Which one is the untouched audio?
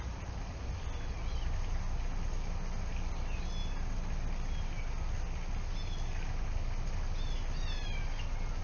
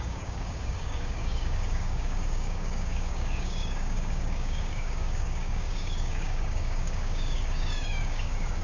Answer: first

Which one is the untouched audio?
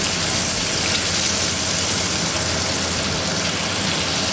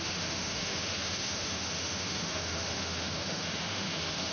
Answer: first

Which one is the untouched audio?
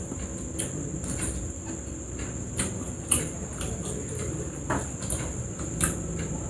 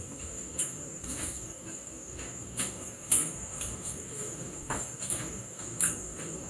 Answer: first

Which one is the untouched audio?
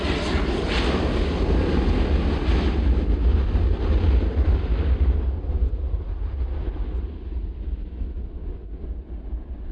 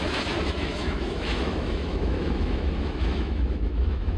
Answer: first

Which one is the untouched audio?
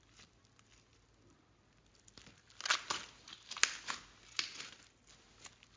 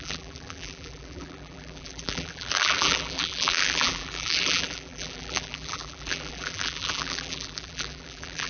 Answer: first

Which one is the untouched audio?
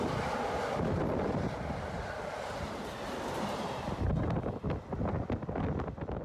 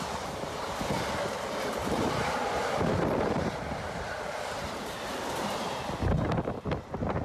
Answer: first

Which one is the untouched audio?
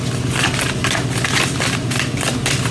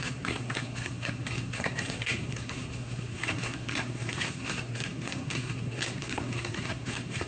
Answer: first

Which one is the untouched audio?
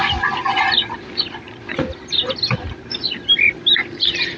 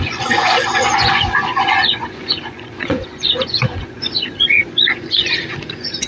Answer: first